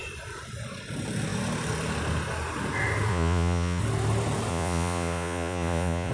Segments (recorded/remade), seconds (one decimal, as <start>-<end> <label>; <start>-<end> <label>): 0.0-3.1 recorded; 3.1-3.8 remade; 3.8-4.5 recorded; 4.5-6.1 remade